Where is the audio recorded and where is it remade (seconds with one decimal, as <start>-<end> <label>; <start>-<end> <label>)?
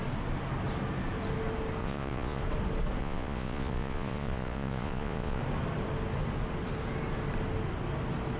0.0-1.8 recorded; 1.8-2.4 remade; 2.4-3.0 recorded; 3.0-5.4 remade; 5.4-8.4 recorded